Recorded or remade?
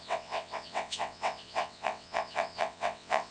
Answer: remade